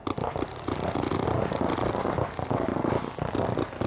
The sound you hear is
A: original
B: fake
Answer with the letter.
A